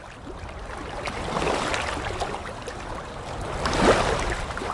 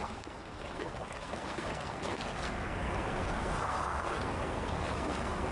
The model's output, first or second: second